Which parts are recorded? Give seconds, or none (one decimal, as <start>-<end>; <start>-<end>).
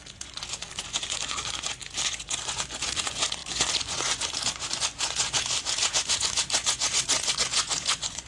none